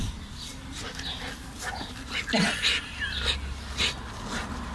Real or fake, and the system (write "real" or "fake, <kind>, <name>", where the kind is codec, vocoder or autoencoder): real